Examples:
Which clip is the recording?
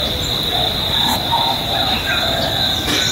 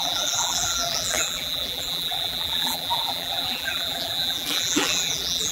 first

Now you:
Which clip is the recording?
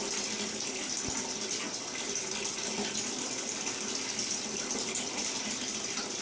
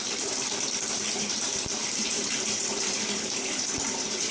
first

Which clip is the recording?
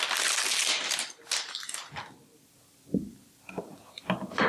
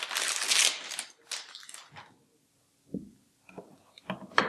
second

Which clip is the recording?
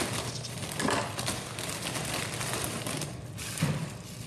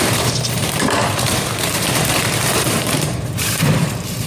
first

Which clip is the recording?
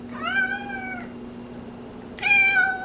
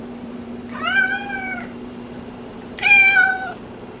first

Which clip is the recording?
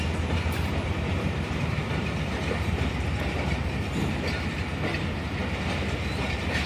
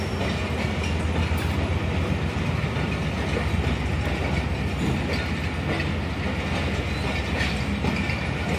second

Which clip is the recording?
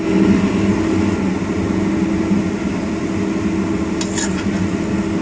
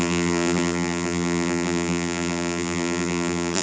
first